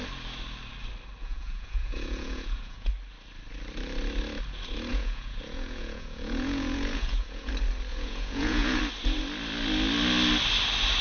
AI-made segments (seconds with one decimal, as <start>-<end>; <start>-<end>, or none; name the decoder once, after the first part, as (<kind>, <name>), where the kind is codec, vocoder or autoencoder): 1.2-2.9 (vocoder, Vocos); 4.9-7.5; 7.9-8.8